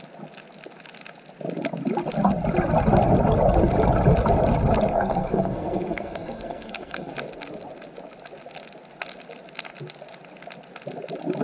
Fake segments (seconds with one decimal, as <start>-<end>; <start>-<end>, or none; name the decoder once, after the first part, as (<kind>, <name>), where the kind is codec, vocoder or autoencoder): 4.9-7.1 (codec, SNAC)